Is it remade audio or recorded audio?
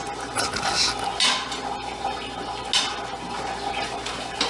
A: recorded